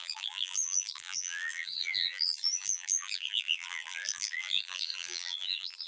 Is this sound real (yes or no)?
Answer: no